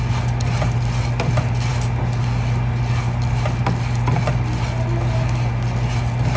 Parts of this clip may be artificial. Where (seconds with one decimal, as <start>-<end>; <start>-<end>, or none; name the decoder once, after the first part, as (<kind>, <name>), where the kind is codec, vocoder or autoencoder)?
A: none